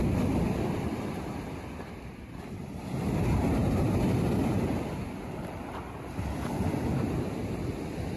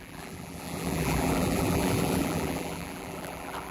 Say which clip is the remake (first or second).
second